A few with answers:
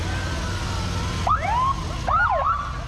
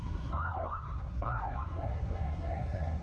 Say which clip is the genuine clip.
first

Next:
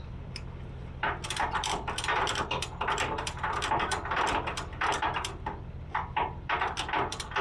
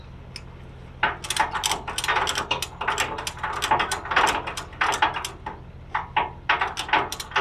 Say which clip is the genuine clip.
second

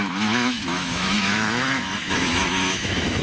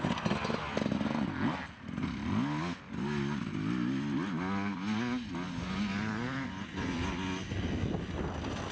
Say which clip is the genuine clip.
second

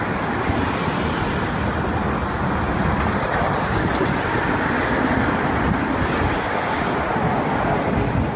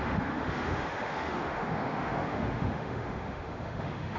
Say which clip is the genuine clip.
first